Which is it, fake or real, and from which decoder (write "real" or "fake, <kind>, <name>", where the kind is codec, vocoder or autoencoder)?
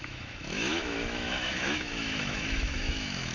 fake, autoencoder, DAC-VAE